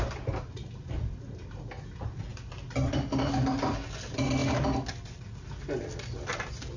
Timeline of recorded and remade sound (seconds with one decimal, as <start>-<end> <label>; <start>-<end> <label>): 0.0-6.8 recorded